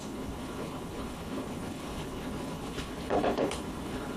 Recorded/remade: remade